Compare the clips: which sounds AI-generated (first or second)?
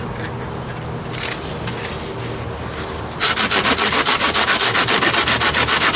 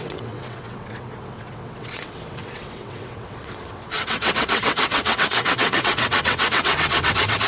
second